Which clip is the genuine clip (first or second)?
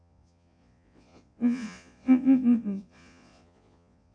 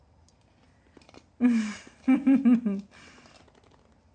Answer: second